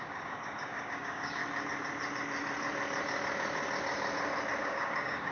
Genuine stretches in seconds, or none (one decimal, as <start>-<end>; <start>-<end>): 1.4-4.6